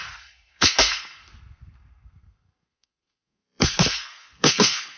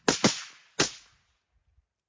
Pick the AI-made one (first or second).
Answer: first